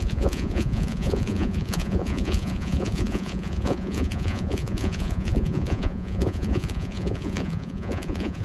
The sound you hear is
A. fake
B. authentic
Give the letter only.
A